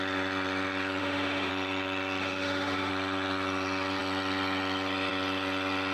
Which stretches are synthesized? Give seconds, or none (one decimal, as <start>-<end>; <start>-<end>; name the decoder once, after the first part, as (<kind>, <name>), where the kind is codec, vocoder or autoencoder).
1.0-1.5 (autoencoder, DAC-VAE); 2.2-2.9